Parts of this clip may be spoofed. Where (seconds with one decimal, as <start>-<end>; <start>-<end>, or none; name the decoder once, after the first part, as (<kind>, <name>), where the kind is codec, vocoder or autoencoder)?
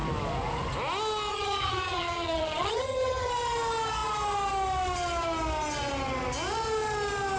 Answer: 1.3-3.3 (vocoder, HiFi-GAN)